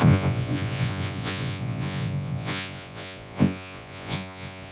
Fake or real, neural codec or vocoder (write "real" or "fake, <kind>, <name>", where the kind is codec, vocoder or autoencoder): fake, vocoder, Vocos